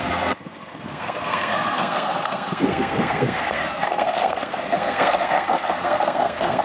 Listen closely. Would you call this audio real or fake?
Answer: fake